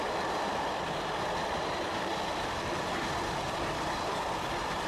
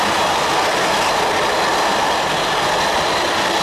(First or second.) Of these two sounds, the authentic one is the second